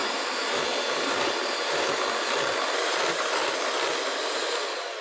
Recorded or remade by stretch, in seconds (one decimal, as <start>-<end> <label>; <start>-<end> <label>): 0.0-5.0 recorded